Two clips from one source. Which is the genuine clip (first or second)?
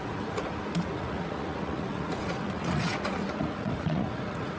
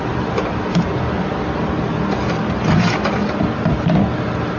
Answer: second